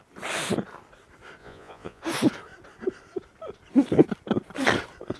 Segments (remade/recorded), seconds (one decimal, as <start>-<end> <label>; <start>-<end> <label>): 0.0-1.4 recorded; 1.4-2.0 remade; 2.0-5.2 recorded